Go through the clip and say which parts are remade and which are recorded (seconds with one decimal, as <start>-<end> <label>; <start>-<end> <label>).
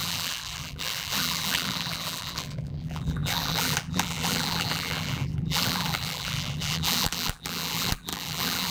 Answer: 0.0-8.7 remade